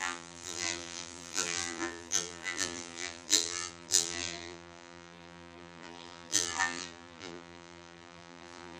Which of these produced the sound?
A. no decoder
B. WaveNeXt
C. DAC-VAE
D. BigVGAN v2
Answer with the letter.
D